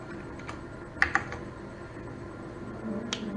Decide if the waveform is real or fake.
real